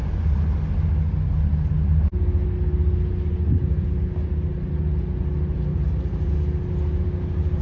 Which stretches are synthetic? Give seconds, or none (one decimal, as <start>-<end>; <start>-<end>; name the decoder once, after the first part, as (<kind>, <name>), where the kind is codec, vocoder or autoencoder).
5.7-6.3 (vocoder, BigVGAN v2)

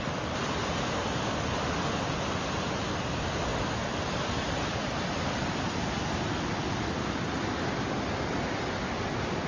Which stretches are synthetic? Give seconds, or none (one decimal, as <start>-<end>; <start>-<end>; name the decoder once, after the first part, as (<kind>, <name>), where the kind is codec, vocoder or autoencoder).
none

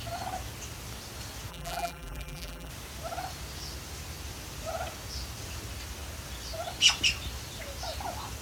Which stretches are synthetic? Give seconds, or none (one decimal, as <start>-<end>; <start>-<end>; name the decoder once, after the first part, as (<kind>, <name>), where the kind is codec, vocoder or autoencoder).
1.5-2.7 (vocoder, BigVGAN v2)

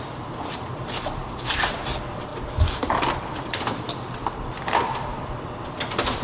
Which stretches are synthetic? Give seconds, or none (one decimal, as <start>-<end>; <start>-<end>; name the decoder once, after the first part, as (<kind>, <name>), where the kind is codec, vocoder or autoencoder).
0.0-6.2 (vocoder, BigVGAN v2)

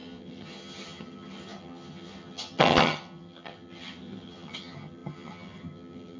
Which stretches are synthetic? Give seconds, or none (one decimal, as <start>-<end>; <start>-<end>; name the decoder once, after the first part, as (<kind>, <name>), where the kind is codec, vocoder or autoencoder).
0.0-6.2 (vocoder, HiFi-GAN)

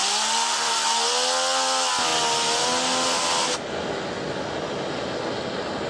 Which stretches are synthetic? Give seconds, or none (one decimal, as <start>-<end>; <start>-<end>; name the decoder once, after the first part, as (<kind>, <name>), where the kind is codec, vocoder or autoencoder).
0.0-0.7 (vocoder, BigVGAN v2)

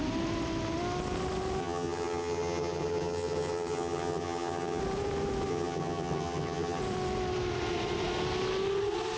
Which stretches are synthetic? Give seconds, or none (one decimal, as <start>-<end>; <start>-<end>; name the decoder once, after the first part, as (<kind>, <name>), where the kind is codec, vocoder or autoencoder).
1.6-4.8 (vocoder, HiFi-GAN); 5.5-6.8